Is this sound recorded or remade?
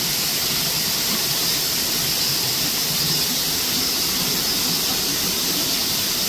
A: recorded